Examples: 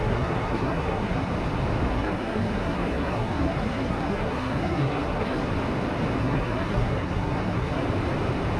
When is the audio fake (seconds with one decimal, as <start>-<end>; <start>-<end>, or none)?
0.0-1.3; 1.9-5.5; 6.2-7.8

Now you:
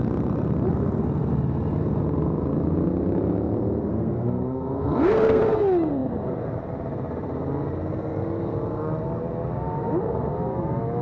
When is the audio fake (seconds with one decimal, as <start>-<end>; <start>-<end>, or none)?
3.9-5.4

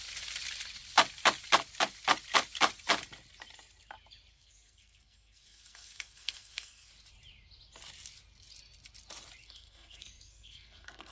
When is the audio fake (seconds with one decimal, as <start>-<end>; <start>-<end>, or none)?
4.3-6.9; 9.4-11.1

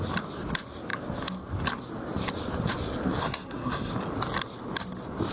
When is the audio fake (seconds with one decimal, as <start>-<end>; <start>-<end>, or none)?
3.2-3.9

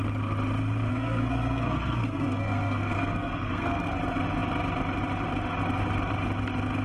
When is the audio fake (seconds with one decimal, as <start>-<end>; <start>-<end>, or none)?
0.9-4.0

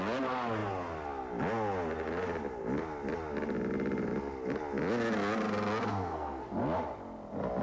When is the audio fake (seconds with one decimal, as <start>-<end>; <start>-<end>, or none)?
5.8-6.5

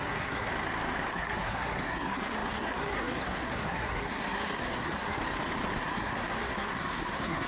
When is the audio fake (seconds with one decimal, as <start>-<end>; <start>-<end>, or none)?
0.0-0.5; 1.1-5.2; 5.8-7.5